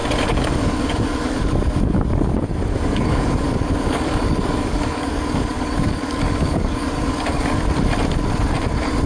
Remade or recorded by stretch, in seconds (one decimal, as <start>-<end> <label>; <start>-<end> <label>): 0.0-2.2 remade; 2.2-2.7 recorded; 2.7-7.6 remade; 7.6-9.1 recorded